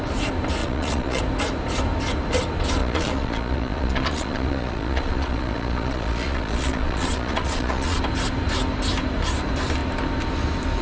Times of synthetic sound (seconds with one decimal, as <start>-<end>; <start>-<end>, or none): 0.6-1.2; 2.8-8.0